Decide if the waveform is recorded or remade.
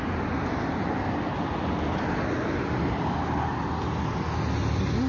recorded